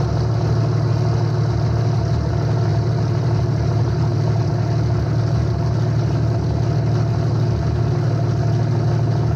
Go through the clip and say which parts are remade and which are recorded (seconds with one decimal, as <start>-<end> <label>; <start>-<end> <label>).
0.0-2.7 recorded; 2.7-4.5 remade; 4.5-9.4 recorded